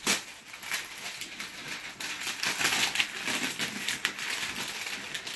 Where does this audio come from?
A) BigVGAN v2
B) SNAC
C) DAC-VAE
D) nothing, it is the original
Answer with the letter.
D